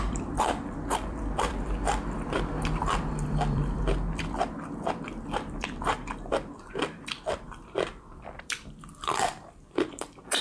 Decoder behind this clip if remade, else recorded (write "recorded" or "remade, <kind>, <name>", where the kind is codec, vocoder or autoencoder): remade, vocoder, BigVGAN v2